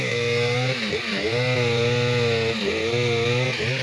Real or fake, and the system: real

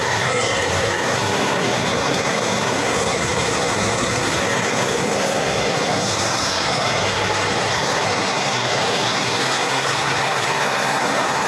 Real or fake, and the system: fake, codec, SNAC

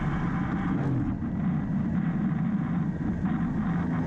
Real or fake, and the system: real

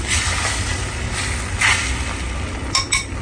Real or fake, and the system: real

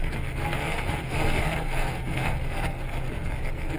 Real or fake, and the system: fake, codec, SNAC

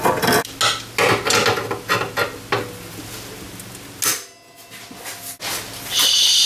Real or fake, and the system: real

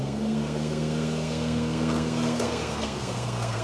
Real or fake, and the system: fake, codec, SNAC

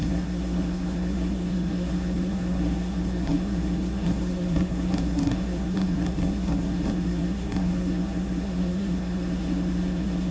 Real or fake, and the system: fake, codec, SNAC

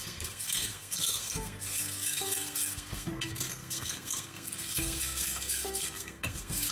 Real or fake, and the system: fake, codec, SNAC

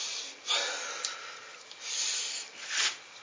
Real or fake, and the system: real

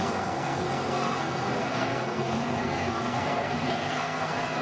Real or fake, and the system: fake, codec, SNAC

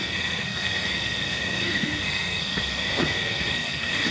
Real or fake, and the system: fake, codec, SNAC